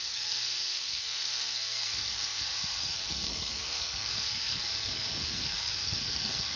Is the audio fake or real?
fake